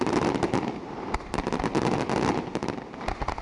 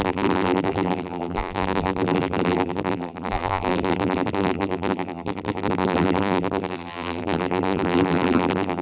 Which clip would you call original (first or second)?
first